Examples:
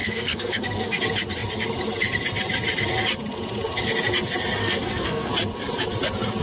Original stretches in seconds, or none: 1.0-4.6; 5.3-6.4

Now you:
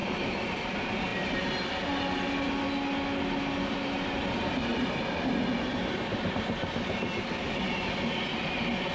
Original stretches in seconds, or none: 0.0-8.9